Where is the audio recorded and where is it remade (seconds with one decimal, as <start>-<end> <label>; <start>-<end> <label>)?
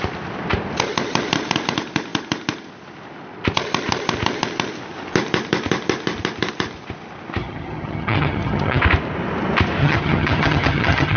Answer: 0.0-7.4 recorded; 7.4-8.8 remade; 8.8-9.8 recorded; 9.8-11.2 remade